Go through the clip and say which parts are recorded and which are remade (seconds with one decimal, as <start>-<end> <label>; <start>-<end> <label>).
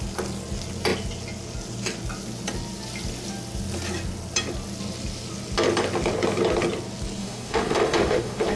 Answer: 0.0-7.2 recorded; 7.2-8.6 remade